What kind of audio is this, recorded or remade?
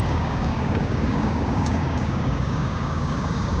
remade